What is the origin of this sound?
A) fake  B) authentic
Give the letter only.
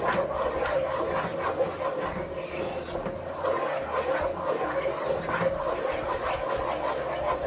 B